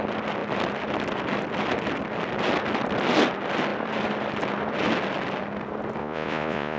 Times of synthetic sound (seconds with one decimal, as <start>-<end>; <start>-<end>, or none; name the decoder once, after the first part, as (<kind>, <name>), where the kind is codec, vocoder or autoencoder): 6.0-6.8 (vocoder, Vocos)